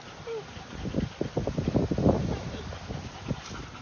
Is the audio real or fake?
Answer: real